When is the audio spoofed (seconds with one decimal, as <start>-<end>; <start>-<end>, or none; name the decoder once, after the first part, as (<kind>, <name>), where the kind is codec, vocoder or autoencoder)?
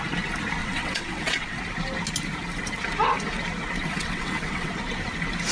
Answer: 0.6-1.6 (vocoder, WaveNeXt); 3.8-4.7